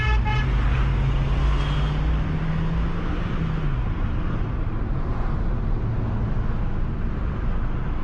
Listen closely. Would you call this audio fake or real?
real